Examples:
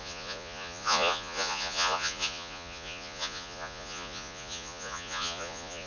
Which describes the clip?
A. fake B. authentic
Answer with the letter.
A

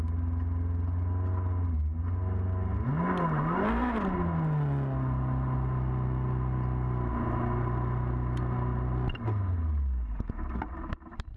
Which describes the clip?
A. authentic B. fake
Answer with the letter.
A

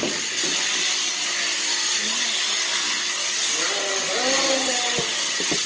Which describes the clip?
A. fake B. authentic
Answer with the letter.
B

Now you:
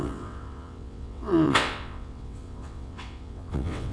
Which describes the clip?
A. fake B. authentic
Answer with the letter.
A